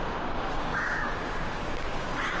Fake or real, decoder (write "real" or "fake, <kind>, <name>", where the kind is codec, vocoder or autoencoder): fake, codec, DAC